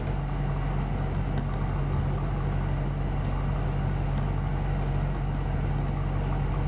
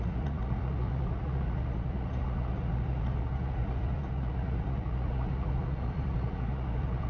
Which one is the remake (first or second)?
second